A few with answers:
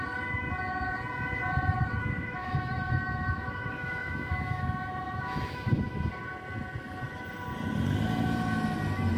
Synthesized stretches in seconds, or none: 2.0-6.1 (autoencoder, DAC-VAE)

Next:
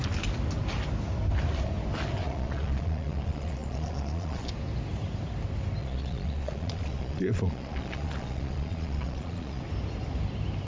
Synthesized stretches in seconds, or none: 2.2-4.5 (vocoder, Vocos); 5.8-9.6

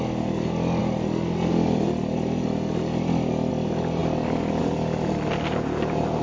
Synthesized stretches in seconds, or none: none

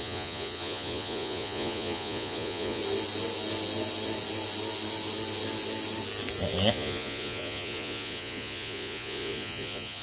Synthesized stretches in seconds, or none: 0.0-2.8 (vocoder, Vocos); 6.7-10.0

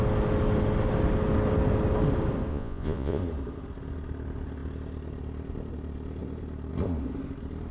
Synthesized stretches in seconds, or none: 2.5-3.2 (vocoder, Vocos)

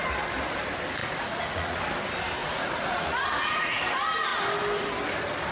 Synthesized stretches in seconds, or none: 1.0-1.8 (vocoder, Vocos); 2.4-3.9